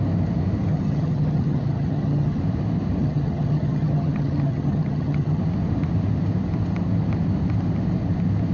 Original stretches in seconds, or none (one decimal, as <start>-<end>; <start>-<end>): 0.0-0.7; 2.4-3.0; 5.4-8.5